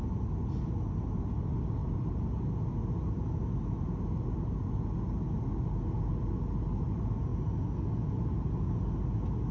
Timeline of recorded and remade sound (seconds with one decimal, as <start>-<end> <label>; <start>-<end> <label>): 0.0-9.5 recorded